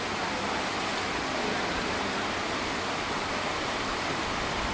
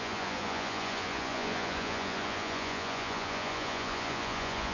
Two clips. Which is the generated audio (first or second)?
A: second